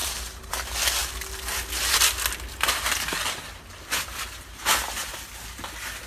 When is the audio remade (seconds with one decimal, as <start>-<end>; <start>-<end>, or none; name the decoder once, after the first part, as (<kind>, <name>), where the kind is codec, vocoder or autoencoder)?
0.0-0.5 (vocoder, BigVGAN v2)

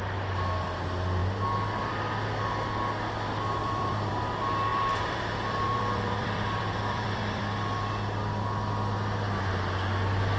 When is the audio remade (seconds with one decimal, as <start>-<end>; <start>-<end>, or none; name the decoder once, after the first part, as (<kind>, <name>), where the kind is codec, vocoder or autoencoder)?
3.6-4.1 (vocoder, BigVGAN v2); 4.7-7.4